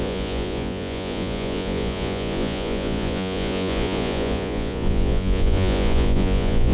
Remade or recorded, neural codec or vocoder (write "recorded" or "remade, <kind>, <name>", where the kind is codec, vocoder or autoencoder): remade, vocoder, Vocos